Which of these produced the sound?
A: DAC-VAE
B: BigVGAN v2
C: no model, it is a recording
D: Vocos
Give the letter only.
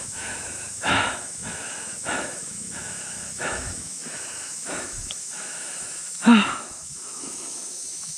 A